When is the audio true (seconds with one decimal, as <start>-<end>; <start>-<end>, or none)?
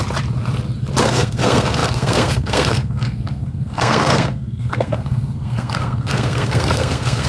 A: 0.0-1.0